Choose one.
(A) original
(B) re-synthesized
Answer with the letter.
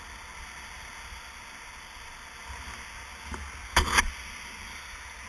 A